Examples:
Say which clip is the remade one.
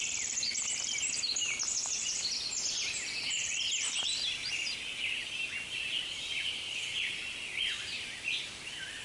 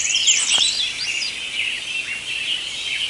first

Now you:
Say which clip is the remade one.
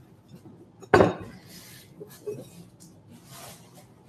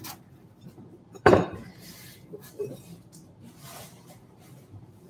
second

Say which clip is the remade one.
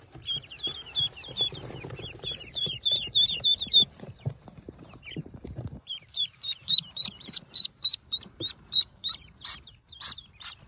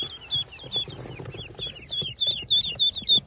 first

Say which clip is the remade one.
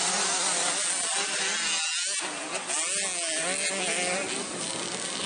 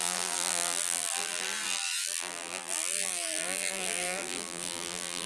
second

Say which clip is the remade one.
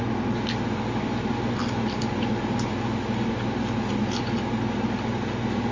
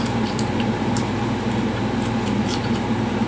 second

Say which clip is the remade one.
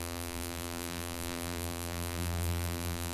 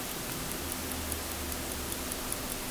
first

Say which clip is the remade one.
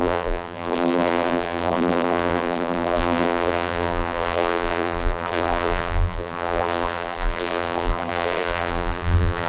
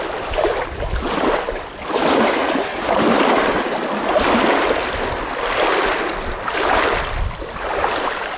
first